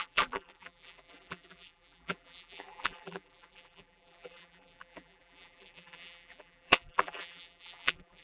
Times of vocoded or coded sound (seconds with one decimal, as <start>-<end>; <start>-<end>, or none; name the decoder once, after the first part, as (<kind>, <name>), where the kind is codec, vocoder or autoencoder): 0.0-8.2 (vocoder, BigVGAN v2)